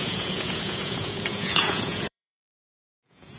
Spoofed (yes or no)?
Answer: yes